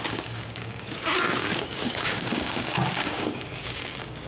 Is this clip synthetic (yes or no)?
yes